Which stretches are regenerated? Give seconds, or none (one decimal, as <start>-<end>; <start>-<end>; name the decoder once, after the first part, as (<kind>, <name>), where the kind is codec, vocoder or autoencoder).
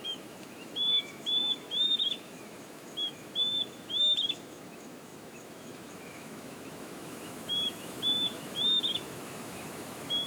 0.0-10.3 (autoencoder, DAC-VAE)